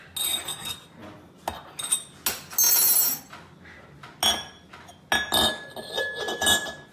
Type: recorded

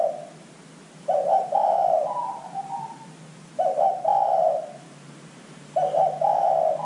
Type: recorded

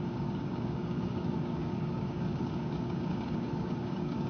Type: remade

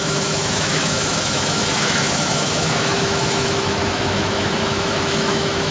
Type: remade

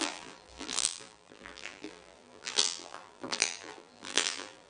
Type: remade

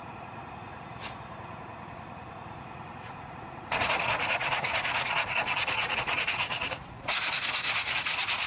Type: remade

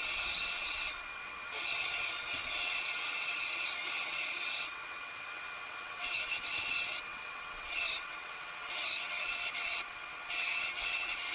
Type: remade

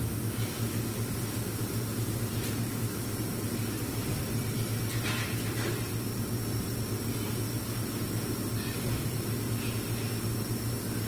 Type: recorded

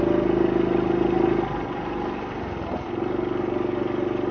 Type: recorded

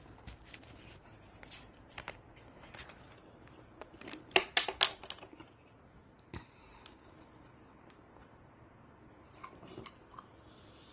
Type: remade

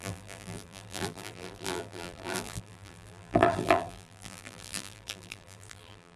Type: remade